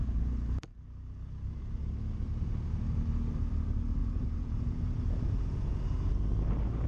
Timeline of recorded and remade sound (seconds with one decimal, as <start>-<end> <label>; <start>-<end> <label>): 0.0-4.0 recorded; 4.0-6.1 remade; 6.1-6.9 recorded